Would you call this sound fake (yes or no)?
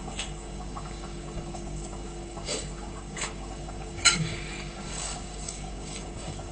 yes